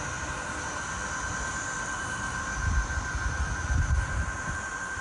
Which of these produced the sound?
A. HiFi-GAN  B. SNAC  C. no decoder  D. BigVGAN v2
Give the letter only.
D